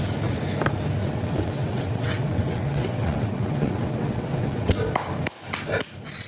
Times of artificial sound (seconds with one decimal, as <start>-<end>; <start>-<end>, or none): 1.0-4.8